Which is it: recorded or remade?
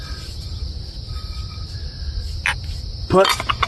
recorded